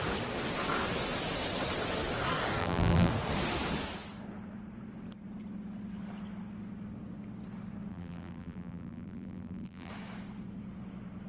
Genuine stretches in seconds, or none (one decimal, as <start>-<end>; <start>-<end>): 0.0-2.6; 3.1-7.9; 9.9-11.3